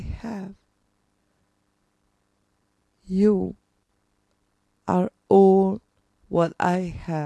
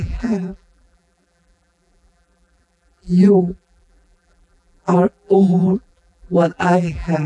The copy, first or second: second